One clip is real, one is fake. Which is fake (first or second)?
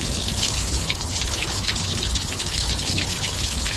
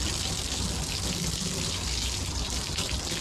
first